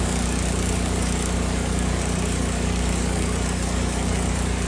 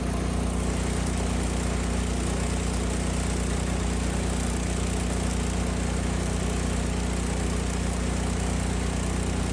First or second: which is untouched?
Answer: second